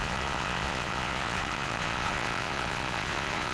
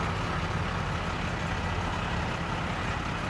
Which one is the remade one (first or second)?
first